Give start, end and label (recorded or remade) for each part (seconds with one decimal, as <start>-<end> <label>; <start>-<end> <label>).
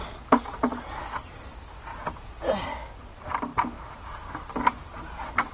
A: 0.0-1.9 recorded; 1.9-2.6 remade; 2.6-5.5 recorded